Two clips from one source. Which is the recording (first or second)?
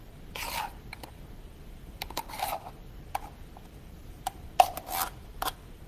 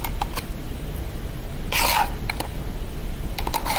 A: second